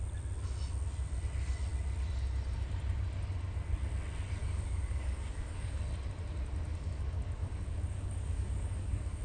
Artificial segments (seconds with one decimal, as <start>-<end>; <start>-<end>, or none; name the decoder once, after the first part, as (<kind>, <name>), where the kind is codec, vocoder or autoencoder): 4.4-5.8 (codec, DAC); 6.7-9.2